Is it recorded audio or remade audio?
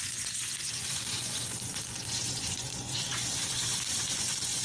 remade